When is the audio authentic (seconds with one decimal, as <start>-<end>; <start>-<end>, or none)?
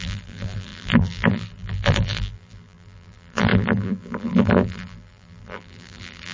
none